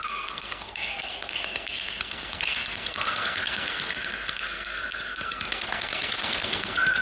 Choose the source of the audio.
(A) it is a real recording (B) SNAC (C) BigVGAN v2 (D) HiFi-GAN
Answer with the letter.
B